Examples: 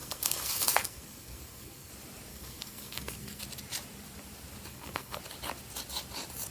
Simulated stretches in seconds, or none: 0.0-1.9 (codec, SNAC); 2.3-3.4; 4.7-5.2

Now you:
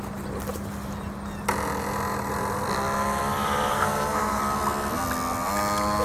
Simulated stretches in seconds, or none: 3.7-4.4 (codec, SNAC)

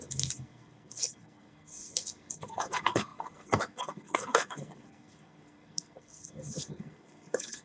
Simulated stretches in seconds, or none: 0.0-7.6 (codec, SNAC)

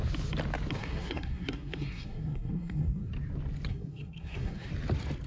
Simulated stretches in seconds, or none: 0.8-3.1 (codec, SNAC); 3.7-4.7

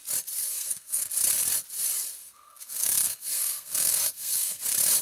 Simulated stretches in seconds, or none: 0.4-1.1 (codec, SNAC); 2.2-4.6

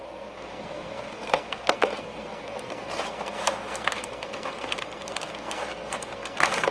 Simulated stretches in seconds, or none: 0.0-6.7 (codec, SNAC)

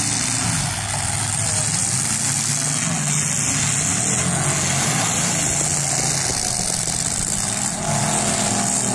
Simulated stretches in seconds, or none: none